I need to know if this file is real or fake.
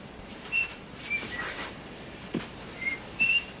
fake